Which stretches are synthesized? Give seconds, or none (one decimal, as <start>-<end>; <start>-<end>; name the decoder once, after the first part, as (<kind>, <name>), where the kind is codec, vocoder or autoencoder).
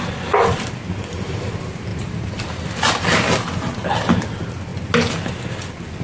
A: 1.9-2.7 (vocoder, BigVGAN v2)